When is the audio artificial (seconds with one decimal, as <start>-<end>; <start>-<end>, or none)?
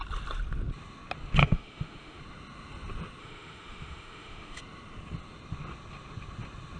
1.4-2.2; 3.2-4.6